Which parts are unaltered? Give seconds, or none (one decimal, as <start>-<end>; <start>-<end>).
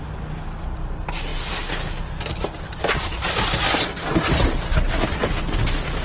0.0-6.0